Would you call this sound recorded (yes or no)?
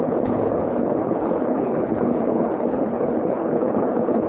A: no